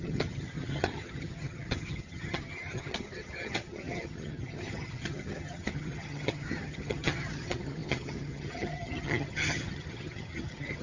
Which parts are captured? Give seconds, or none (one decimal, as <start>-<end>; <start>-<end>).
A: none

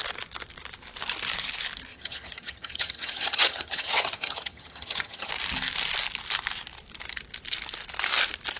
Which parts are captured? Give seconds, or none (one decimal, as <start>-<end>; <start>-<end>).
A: 0.0-1.9; 5.3-8.6

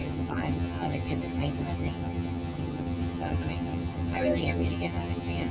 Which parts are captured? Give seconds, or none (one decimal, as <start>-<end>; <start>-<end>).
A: none

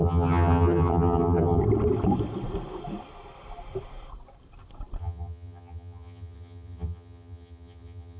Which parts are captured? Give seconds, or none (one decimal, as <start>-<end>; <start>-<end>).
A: 1.6-5.0

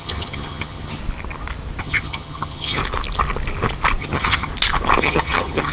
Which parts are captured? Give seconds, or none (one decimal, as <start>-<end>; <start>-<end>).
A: 1.0-1.8; 2.8-4.0; 4.5-5.0

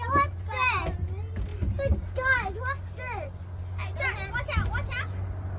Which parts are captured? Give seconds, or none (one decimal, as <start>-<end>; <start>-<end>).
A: 0.0-5.6

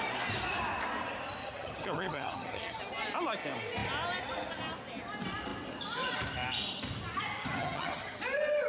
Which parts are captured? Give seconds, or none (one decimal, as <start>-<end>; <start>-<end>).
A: 0.0-1.4; 2.8-7.4; 8.2-8.7